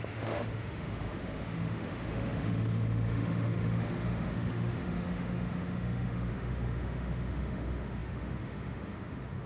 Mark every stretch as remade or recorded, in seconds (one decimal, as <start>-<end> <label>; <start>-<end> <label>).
0.0-9.5 remade